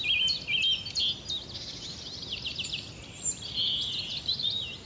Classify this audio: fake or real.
real